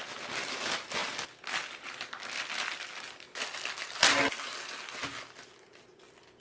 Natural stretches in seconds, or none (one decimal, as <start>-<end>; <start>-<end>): 0.0-6.4

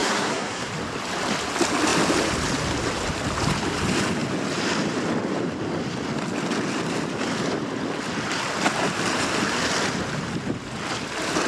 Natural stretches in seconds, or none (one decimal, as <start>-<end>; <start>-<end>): 0.7-11.5

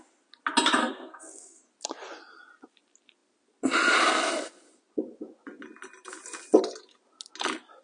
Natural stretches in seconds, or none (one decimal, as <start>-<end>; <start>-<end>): 0.0-0.8; 1.6-7.8

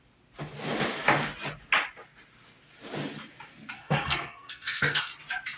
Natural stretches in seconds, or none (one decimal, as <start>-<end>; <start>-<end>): 0.0-3.5; 5.1-5.6

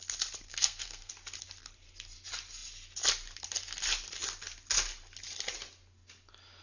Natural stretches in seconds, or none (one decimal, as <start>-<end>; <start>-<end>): 0.0-0.5; 1.1-6.6